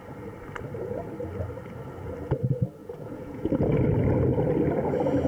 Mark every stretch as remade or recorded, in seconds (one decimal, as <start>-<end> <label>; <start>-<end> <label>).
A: 0.0-2.8 recorded; 2.8-3.5 remade; 3.5-5.3 recorded